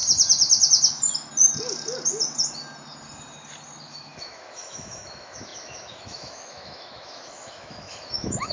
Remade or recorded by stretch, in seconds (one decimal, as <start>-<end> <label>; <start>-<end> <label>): 0.0-3.8 recorded; 3.8-8.5 remade